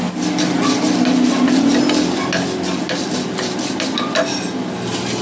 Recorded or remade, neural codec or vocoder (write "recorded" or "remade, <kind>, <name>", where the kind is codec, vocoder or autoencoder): recorded